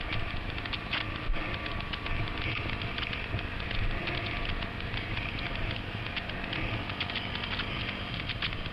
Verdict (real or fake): real